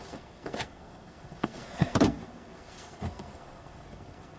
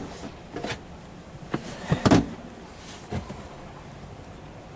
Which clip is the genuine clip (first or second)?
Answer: second